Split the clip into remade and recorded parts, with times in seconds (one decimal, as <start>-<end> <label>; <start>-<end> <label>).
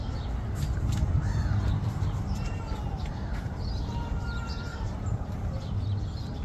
0.0-3.6 remade; 3.6-4.7 recorded; 4.7-5.7 remade; 5.7-6.4 recorded